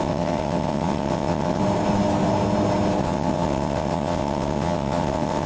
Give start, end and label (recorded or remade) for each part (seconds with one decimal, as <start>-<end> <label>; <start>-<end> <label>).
0.0-1.6 remade; 1.6-3.0 recorded; 3.0-5.5 remade